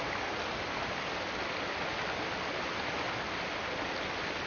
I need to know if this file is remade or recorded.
recorded